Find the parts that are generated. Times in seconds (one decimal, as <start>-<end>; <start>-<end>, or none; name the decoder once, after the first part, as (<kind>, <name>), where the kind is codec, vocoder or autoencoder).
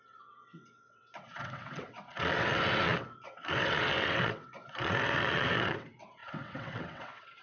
0.0-7.4 (vocoder, WaveNeXt)